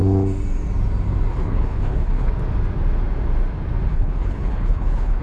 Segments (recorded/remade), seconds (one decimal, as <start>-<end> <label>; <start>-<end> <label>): 0.0-1.3 recorded; 1.3-2.3 remade; 2.3-3.9 recorded; 3.9-5.2 remade